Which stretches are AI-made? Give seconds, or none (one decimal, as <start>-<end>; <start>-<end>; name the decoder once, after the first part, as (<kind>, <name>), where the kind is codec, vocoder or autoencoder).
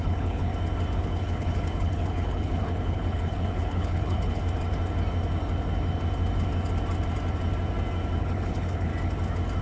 0.0-0.5 (codec, HILCodec); 1.0-4.4; 8.2-8.9